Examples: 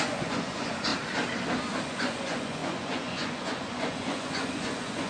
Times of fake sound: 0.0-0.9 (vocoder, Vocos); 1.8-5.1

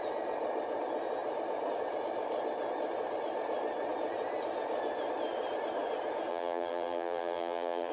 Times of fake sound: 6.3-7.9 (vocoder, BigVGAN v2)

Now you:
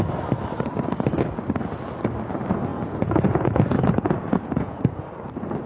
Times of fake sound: 2.7-5.2 (vocoder, Vocos)